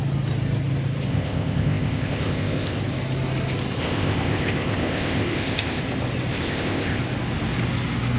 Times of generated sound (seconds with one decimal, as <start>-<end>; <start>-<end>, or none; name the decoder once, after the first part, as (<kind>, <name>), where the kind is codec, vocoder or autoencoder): 1.1-2.8 (codec, ZipCodec); 3.8-5.8; 6.3-7.0